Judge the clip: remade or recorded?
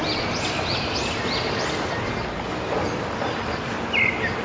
recorded